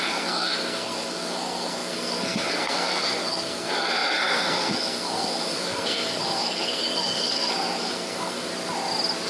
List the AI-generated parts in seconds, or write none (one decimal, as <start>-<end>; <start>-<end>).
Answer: 0.0-8.5